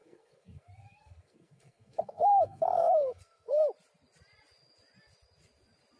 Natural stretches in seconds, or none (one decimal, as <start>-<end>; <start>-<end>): 3.6-6.0